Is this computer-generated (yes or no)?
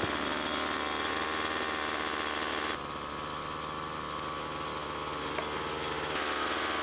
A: no